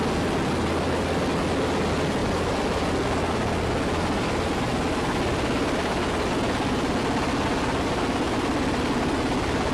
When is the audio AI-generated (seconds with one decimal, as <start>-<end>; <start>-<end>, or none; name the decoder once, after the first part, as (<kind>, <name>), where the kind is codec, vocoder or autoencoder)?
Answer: none